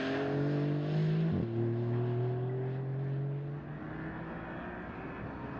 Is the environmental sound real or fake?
real